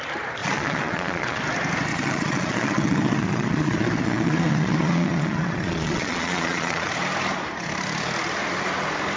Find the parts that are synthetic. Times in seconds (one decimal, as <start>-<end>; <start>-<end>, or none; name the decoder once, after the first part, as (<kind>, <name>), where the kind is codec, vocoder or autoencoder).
0.4-1.4 (vocoder, Vocos); 1.9-6.9